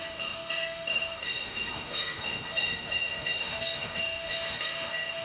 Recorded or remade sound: remade